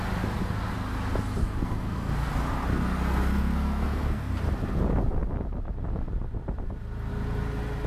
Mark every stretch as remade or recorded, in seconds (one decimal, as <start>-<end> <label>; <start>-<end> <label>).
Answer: 0.0-1.4 recorded; 1.4-2.3 remade; 2.3-2.7 recorded; 2.7-4.3 remade; 4.3-7.9 recorded